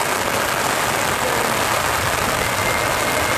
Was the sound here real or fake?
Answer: real